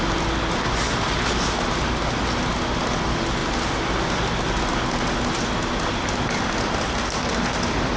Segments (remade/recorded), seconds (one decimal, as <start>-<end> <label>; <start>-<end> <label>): 0.0-8.0 recorded